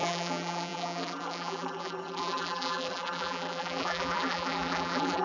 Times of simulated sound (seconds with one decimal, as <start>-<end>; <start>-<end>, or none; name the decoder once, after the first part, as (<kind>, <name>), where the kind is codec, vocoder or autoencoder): 0.0-5.2 (vocoder, BigVGAN v2)